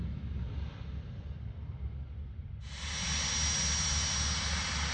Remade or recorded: recorded